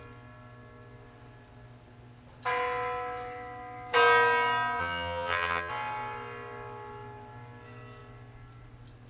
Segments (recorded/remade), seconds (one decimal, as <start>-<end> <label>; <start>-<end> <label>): 0.0-4.8 recorded; 4.8-5.7 remade; 5.7-9.1 recorded